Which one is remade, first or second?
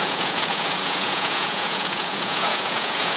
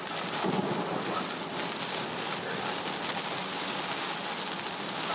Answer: first